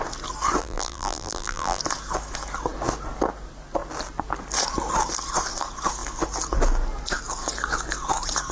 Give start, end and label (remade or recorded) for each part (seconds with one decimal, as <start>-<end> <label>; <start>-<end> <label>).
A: 0.0-0.6 recorded; 0.6-1.8 remade; 1.8-8.5 recorded